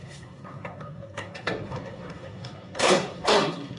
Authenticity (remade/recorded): remade